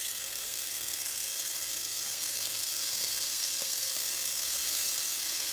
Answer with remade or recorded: remade